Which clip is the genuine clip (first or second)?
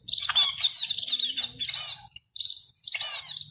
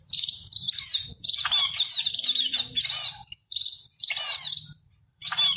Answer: first